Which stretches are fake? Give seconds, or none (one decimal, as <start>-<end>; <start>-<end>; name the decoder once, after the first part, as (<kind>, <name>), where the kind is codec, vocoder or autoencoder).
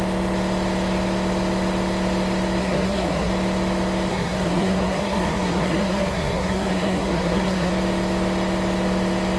2.6-3.3 (codec, SNAC); 4.1-7.7